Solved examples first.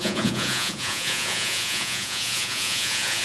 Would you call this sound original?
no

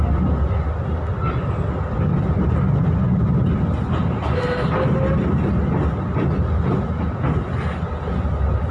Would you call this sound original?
yes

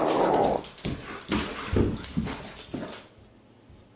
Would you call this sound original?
yes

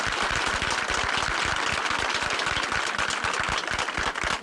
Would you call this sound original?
yes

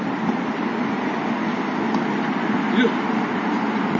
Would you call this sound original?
yes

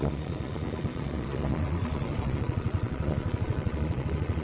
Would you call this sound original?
no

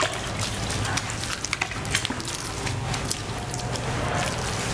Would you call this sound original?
yes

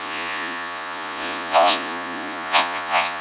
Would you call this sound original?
no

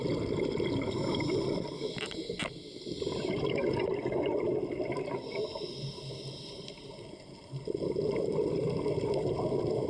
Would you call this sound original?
yes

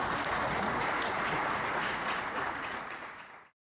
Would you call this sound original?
no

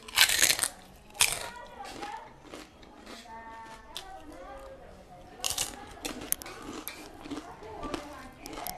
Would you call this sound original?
yes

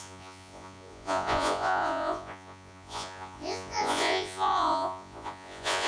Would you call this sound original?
no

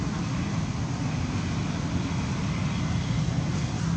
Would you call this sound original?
yes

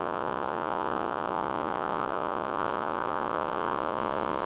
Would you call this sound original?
no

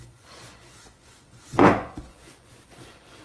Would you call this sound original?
no